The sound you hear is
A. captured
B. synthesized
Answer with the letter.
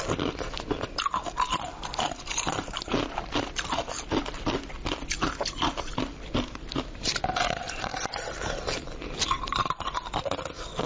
A